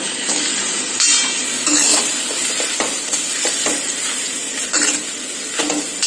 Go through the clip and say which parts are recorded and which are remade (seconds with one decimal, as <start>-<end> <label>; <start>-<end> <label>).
0.0-6.1 recorded